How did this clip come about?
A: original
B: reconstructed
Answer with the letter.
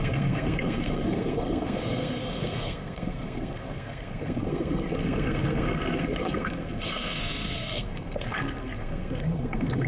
B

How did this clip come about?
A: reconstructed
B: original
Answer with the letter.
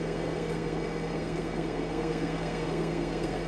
A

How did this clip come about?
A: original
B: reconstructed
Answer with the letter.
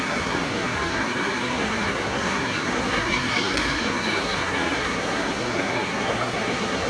B